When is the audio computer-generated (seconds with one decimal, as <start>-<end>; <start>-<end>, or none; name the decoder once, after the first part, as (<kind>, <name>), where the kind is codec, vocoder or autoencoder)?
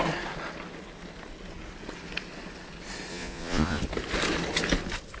3.1-3.8 (vocoder, Vocos)